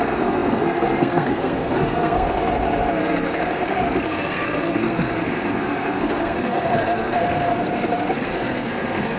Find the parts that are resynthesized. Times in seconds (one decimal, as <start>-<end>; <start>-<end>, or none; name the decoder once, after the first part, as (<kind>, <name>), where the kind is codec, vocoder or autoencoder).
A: 0.0-9.2 (codec, SNAC)